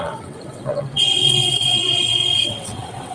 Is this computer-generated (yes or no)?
yes